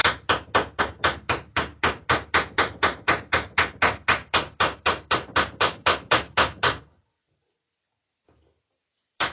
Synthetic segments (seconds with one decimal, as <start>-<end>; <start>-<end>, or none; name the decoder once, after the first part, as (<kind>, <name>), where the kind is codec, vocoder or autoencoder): none